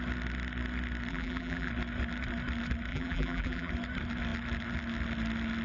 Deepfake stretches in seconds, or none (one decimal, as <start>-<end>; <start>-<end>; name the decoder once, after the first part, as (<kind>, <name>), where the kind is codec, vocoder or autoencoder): 1.1-1.7 (vocoder, BigVGAN v2); 2.9-3.7